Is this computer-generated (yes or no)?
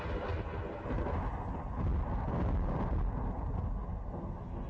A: no